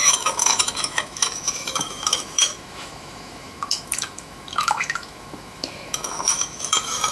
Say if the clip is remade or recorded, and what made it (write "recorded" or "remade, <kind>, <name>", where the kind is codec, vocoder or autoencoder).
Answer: remade, autoencoder, DAC-VAE